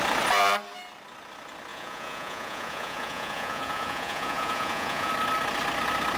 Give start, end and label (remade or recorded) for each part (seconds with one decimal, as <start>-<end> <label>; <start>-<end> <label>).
0.0-1.7 recorded; 1.7-5.1 remade; 5.1-6.2 recorded